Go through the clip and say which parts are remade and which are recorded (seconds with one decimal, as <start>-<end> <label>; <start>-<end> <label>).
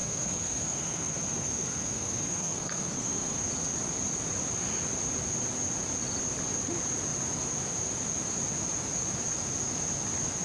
0.0-3.5 remade; 3.5-10.4 recorded